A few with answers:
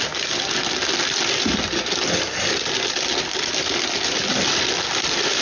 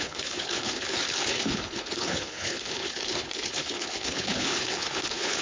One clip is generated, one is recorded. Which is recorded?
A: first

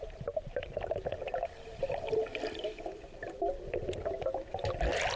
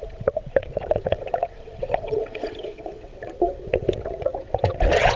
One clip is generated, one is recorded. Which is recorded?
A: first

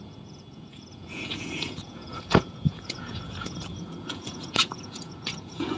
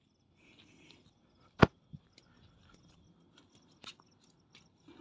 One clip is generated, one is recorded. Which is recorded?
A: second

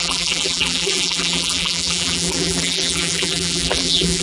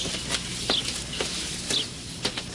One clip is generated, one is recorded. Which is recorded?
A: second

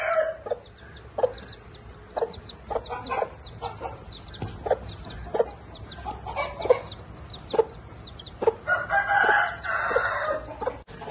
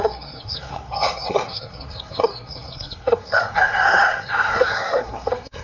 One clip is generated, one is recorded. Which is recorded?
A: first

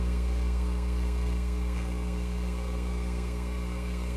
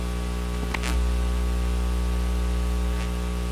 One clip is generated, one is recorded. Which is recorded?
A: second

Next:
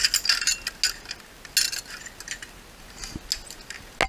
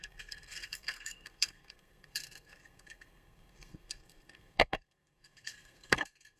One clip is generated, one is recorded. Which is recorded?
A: first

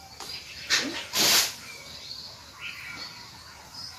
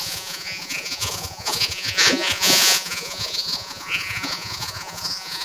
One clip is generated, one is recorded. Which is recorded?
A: first